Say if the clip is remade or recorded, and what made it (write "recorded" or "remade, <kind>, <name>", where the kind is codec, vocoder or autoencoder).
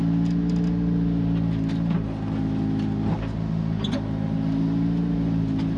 recorded